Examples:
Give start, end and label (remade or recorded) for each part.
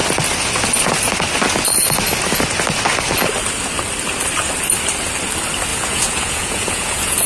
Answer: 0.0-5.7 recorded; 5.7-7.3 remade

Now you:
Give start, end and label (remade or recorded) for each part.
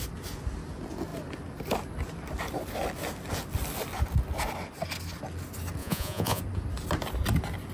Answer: 0.0-5.8 recorded; 5.8-6.4 remade; 6.4-7.7 recorded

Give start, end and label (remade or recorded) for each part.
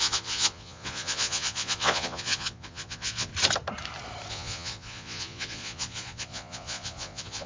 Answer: 0.0-3.3 remade; 3.3-4.3 recorded; 4.3-7.5 remade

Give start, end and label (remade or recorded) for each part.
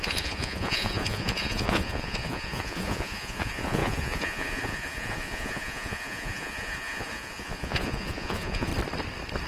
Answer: 0.0-8.7 remade; 8.7-9.5 recorded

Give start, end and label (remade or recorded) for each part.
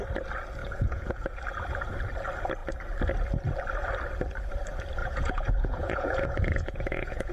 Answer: 0.0-0.6 recorded; 0.6-1.4 remade; 1.4-5.0 recorded; 5.0-7.3 remade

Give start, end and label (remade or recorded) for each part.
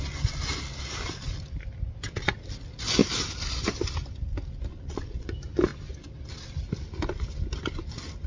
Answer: 0.0-4.7 recorded; 4.7-5.3 remade; 5.3-8.3 recorded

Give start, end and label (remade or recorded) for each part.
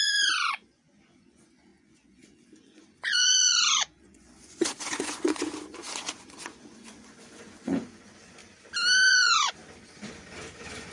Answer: 0.0-8.4 remade; 8.4-9.1 recorded; 9.1-9.6 remade; 9.6-10.1 recorded; 10.1-10.9 remade